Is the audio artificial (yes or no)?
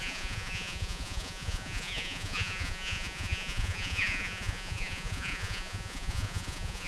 yes